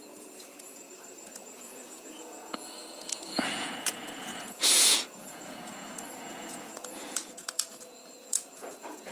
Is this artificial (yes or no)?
yes